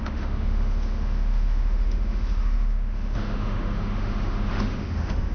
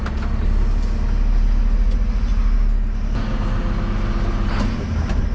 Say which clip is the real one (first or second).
second